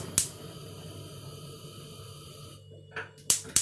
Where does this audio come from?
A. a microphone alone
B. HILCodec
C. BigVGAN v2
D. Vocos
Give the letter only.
A